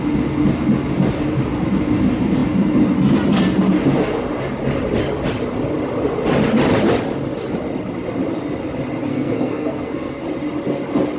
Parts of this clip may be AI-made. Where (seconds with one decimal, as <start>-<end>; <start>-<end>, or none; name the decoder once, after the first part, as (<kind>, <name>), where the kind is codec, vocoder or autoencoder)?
9.1-10.2 (codec, SNAC)